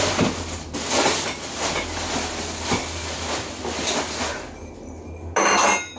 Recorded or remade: recorded